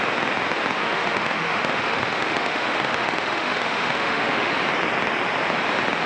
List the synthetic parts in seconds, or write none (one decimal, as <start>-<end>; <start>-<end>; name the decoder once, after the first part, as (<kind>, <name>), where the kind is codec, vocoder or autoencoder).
0.8-4.5 (autoencoder, DAC-VAE)